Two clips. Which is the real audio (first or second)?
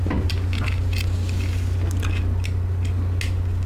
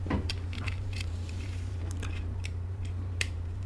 first